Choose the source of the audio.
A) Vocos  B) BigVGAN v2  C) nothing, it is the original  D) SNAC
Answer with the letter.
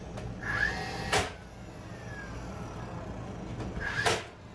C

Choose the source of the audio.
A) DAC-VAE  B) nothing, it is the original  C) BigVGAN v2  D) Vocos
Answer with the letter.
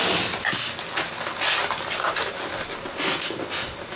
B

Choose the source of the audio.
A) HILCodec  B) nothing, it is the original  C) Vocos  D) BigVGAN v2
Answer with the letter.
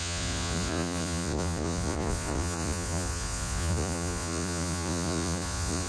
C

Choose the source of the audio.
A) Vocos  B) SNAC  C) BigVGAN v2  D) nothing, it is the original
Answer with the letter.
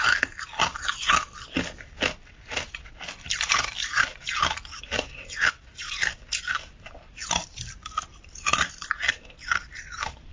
D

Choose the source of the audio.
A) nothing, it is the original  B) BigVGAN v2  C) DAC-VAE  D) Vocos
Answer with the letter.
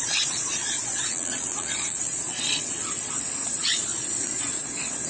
D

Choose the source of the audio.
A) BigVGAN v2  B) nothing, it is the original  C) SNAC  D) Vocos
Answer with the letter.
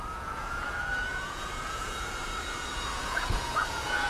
D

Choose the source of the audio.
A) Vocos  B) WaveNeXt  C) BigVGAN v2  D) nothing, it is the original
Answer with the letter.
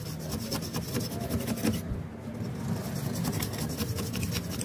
D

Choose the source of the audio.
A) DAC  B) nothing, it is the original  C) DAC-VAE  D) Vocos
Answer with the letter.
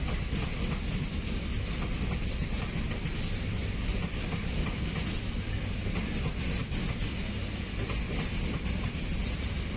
B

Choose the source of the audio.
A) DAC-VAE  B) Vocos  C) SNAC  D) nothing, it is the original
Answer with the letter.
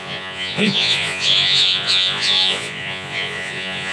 B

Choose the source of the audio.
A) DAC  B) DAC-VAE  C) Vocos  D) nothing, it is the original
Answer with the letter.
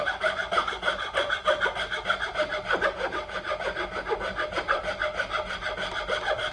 D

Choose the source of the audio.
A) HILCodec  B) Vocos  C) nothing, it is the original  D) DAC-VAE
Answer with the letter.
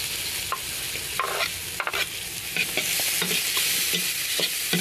C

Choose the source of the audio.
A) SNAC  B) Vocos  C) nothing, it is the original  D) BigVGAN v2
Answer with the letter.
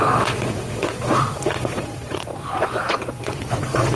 B